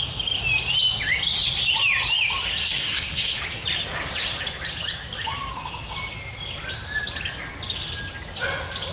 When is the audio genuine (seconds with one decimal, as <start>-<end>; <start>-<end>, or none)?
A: 0.0-2.6; 3.4-8.9